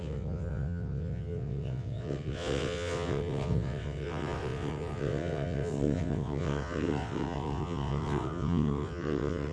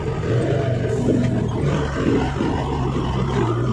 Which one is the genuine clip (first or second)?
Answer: second